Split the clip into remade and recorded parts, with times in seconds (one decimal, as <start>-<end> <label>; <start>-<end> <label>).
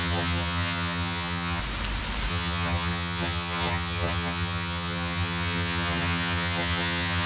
0.0-1.6 remade; 1.6-2.3 recorded; 2.3-7.3 remade